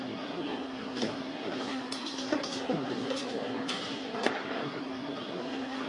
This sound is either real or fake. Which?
fake